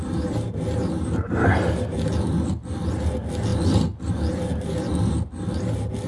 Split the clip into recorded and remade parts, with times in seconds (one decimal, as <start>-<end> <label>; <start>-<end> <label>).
0.0-6.1 recorded